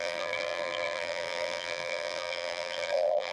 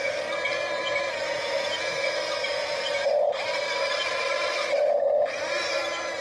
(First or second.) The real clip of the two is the second